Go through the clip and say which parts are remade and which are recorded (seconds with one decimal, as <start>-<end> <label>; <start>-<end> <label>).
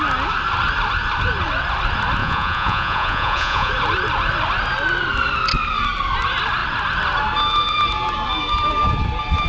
0.0-2.2 recorded; 2.2-3.7 remade; 3.7-9.5 recorded